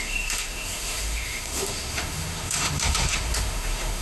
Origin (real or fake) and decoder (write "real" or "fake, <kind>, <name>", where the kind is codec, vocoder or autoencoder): fake, autoencoder, DAC-VAE